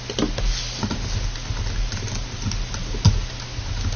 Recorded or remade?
recorded